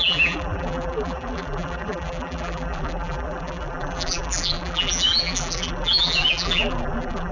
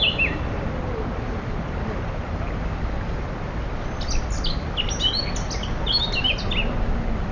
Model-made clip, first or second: first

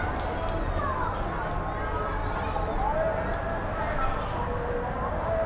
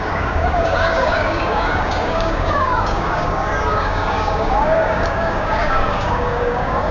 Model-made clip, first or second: second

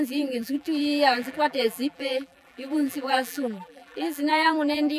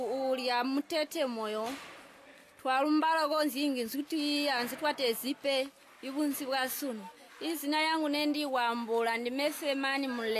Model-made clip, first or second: first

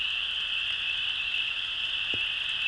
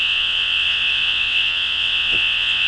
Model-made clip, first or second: second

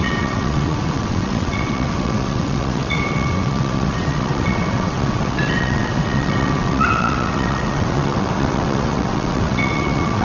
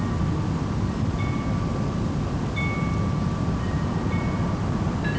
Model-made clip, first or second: first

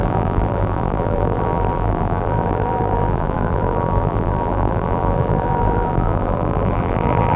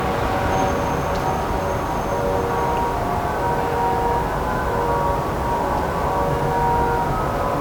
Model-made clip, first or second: first